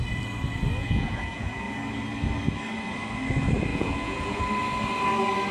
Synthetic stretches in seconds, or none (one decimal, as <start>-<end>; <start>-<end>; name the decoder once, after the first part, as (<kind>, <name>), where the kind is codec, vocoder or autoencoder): 0.8-1.7 (vocoder, Vocos); 3.7-4.4